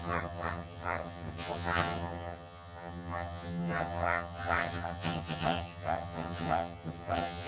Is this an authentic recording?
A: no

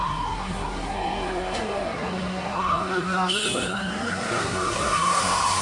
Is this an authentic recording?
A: no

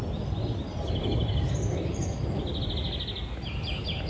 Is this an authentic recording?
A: yes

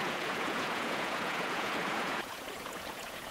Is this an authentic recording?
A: no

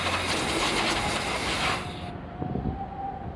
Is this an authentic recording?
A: yes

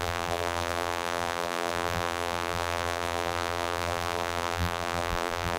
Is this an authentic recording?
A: no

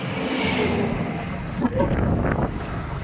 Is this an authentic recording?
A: yes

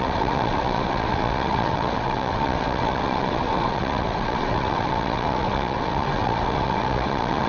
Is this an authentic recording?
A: no